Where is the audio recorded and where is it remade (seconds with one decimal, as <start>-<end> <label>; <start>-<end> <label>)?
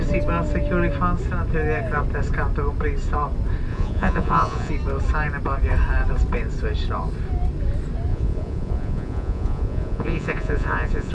0.0-3.7 recorded; 3.7-4.7 remade; 4.7-8.1 recorded; 8.1-11.1 remade